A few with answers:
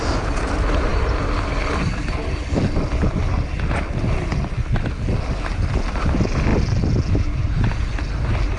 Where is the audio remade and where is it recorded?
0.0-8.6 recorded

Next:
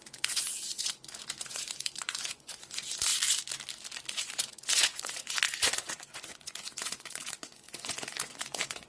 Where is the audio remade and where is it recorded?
0.0-3.1 remade; 3.1-4.1 recorded; 4.1-8.9 remade